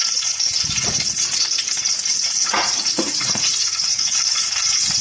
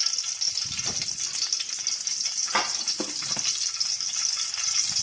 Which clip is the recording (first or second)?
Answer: second